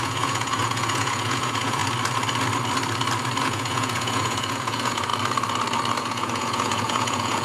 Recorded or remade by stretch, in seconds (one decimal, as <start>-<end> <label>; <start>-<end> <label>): 0.0-1.8 remade; 1.8-3.4 recorded; 3.4-5.1 remade; 5.1-6.0 recorded; 6.0-7.4 remade